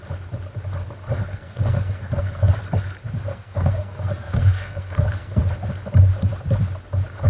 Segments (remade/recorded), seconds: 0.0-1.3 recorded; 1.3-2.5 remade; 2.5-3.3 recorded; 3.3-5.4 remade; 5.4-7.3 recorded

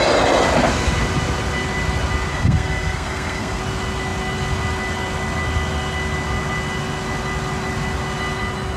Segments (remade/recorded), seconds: 0.0-2.3 recorded; 2.3-3.6 remade; 3.6-8.8 recorded

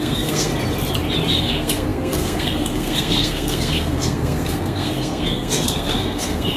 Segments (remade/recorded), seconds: 0.0-0.5 remade; 0.5-1.4 recorded; 1.4-6.6 remade

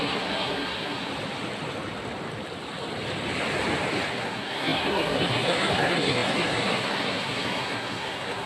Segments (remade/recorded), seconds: 0.0-1.1 remade; 1.1-4.1 recorded; 4.1-8.5 remade

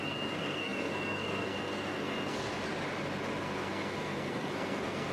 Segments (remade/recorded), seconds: 0.0-2.5 remade; 2.5-3.4 recorded; 3.4-5.1 remade

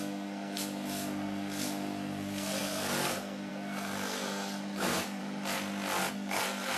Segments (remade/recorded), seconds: 0.0-5.2 remade; 5.2-6.1 recorded; 6.1-6.8 remade

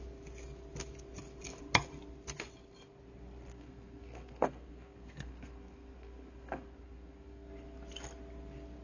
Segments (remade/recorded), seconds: 0.0-3.5 recorded; 3.5-7.5 remade; 7.5-8.8 recorded